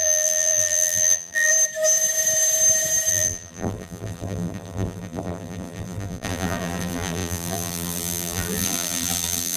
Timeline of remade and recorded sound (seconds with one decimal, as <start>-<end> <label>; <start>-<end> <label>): 0.0-1.5 remade; 1.5-3.1 recorded; 3.1-9.6 remade